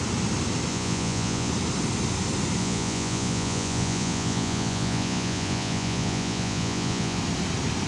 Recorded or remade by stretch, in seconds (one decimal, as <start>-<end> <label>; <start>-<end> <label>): 0.0-0.7 recorded; 0.7-1.5 remade; 1.5-2.6 recorded; 2.6-7.2 remade; 7.2-7.9 recorded